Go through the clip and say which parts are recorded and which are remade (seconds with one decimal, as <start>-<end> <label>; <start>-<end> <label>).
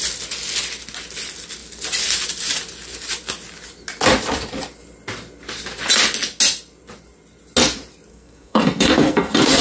0.0-8.1 recorded; 8.1-9.6 remade